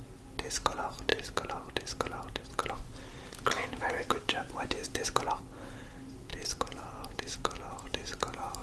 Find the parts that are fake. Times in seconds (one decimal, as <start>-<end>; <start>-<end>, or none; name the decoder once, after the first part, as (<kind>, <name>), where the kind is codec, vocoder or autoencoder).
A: none

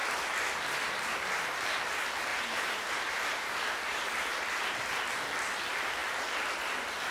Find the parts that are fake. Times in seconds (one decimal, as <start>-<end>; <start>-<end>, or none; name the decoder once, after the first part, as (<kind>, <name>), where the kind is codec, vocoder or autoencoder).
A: 2.3-4.3 (vocoder, BigVGAN v2)

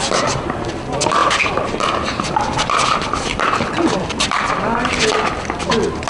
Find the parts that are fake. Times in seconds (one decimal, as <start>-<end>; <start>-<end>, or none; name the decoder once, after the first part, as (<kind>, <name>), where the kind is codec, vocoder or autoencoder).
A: 1.2-4.9 (vocoder, BigVGAN v2)

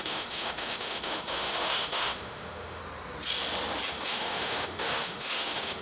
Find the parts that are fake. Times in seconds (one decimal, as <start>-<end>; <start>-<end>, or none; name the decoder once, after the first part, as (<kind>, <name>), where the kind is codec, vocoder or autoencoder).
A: 0.0-2.8 (autoencoder, DAC-VAE); 3.9-5.8

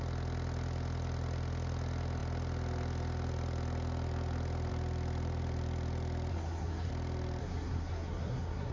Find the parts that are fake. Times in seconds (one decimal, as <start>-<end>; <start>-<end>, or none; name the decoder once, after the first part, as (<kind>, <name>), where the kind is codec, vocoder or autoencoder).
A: 6.3-6.9 (codec, SNAC); 7.4-8.7

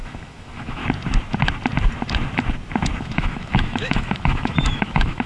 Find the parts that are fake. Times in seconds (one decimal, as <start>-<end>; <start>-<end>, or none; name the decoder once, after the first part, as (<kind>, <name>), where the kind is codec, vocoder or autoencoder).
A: 0.0-0.8 (autoencoder, DAC-VAE); 3.0-5.3

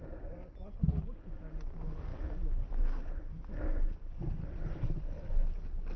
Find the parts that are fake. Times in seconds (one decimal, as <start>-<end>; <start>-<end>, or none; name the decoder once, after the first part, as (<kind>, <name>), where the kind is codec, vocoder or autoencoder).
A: none